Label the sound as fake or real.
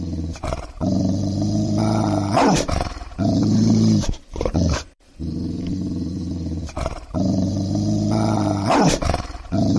fake